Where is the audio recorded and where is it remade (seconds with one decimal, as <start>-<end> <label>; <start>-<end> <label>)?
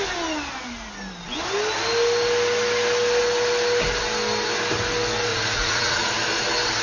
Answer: 0.0-5.3 recorded; 5.3-6.1 remade; 6.1-6.8 recorded